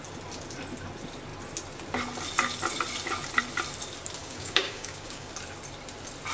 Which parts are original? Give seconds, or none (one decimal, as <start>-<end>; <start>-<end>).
0.0-4.2; 5.3-6.3